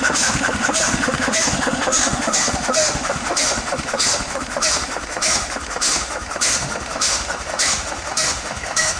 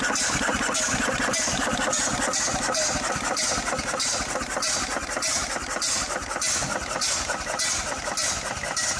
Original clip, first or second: second